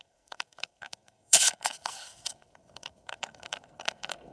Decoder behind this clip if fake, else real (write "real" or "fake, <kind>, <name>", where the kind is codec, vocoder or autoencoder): fake, codec, SNAC